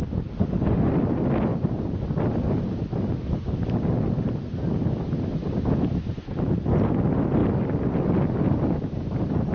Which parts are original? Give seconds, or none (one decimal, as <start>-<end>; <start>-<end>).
0.0-0.4; 0.9-9.5